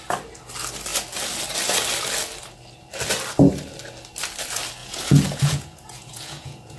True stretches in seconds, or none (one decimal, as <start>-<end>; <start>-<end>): 0.0-4.8